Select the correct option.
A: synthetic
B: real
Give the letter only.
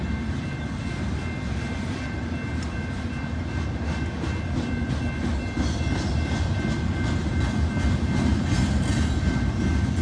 B